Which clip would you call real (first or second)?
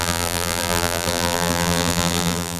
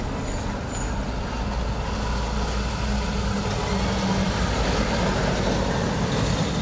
second